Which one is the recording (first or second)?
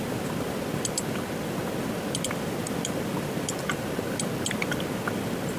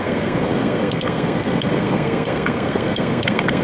first